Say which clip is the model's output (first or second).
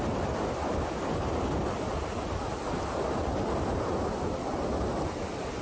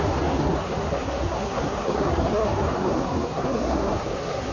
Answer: second